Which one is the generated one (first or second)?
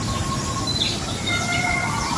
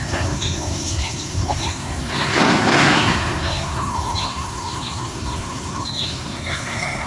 second